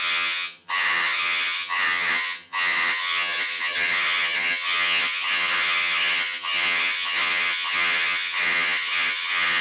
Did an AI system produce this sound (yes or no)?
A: yes